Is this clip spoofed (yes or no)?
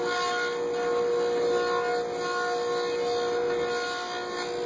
no